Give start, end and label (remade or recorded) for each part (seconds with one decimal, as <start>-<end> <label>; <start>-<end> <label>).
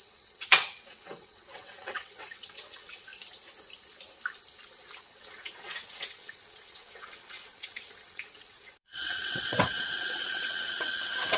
0.0-3.1 remade; 3.1-5.0 recorded; 5.0-11.4 remade